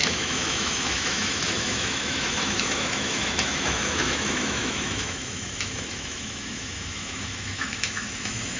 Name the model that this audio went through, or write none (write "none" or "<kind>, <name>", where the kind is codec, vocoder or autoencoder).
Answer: autoencoder, DAC-VAE